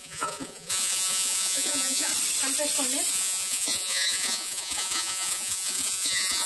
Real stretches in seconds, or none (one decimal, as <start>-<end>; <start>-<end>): 2.1-3.1